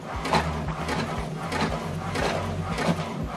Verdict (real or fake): real